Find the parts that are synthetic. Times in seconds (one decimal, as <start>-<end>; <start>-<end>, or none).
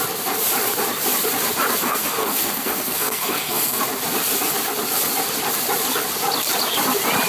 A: 1.8-3.8